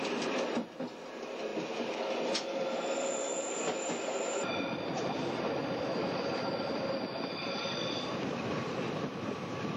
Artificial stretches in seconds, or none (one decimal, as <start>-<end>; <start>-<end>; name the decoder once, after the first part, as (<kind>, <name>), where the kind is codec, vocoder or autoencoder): none